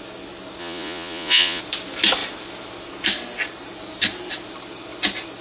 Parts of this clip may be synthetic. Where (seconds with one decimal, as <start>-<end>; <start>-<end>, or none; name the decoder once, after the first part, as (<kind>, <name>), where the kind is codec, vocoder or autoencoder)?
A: 0.6-1.6 (vocoder, Vocos)